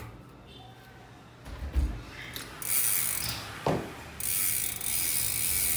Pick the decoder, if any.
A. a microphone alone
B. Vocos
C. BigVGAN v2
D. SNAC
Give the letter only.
A